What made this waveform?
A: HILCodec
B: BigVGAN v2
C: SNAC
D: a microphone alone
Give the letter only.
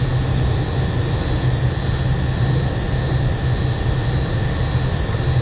D